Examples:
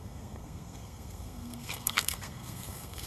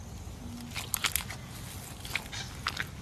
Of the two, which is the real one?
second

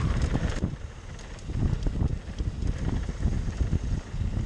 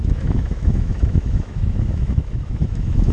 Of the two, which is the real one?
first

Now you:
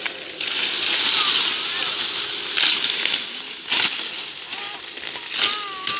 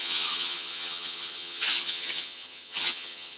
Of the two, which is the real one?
first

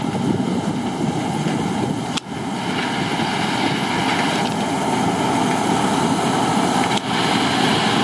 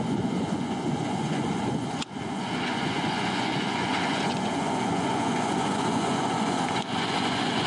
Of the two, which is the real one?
first